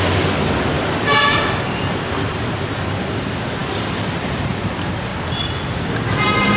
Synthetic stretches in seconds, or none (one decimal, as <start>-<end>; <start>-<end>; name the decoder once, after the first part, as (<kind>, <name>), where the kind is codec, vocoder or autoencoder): none